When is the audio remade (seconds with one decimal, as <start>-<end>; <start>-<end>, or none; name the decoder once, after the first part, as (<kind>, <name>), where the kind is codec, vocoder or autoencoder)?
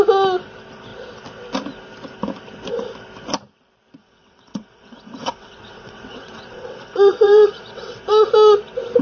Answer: 4.0-8.3 (vocoder, WaveNeXt)